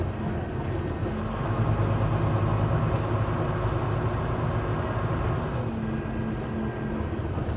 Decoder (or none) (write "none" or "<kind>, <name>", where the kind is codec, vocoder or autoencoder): none